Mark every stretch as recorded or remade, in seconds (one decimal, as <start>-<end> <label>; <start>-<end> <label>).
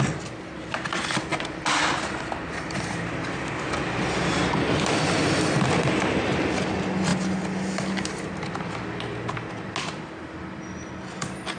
0.0-11.6 recorded